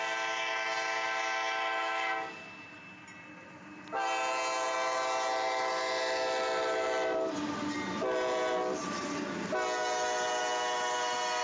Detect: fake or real real